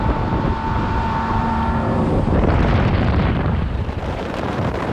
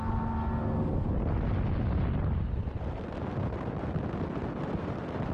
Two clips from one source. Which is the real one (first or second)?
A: second